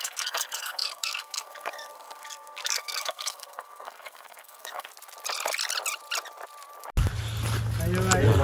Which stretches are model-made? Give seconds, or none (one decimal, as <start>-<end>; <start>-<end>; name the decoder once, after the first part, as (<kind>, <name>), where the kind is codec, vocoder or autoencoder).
0.0-4.9 (codec, SNAC)